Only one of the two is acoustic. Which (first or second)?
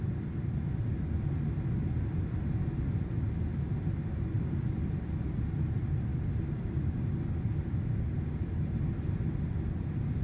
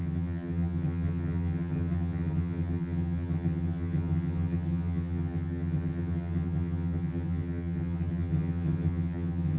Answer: first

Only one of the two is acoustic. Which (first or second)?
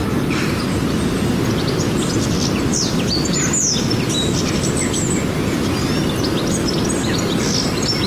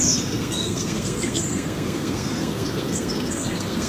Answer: first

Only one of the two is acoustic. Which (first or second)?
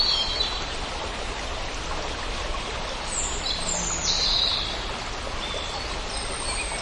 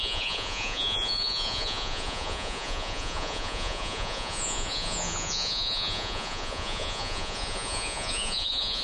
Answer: first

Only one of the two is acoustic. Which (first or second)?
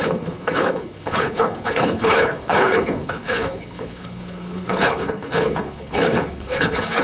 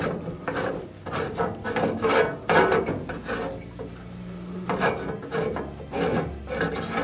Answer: second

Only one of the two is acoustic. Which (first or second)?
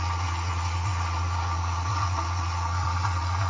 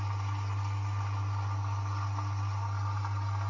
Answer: second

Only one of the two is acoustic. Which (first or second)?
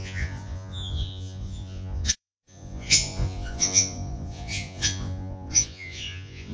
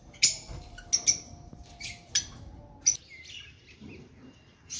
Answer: second